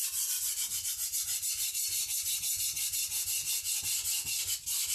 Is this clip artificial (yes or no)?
no